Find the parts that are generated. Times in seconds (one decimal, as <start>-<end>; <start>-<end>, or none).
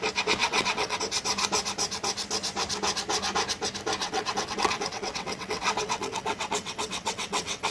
0.4-1.0; 4.0-7.7